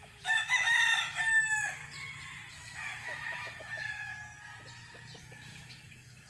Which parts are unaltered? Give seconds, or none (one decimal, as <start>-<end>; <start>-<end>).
0.8-1.3; 1.8-2.5; 4.1-5.2